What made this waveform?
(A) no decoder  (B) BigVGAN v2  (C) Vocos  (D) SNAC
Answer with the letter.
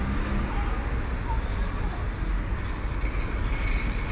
A